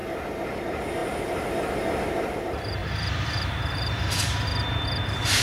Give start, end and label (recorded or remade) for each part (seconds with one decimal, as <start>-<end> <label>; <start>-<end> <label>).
0.0-0.5 recorded; 0.5-4.5 remade; 4.5-5.4 recorded